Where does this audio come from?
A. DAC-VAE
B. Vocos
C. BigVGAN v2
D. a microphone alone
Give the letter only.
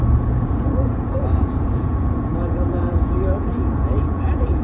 B